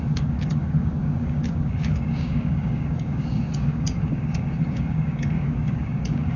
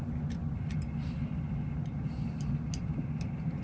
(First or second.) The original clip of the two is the second